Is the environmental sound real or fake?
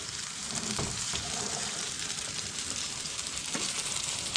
fake